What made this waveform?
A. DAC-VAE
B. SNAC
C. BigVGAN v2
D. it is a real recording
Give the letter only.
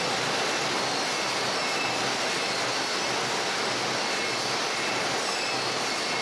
D